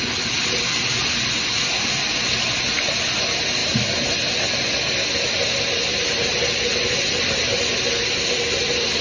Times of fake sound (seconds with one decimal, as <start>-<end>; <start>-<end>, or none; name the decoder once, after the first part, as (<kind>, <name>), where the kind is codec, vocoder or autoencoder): none